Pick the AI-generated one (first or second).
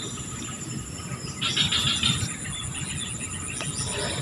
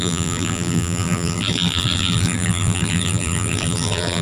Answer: second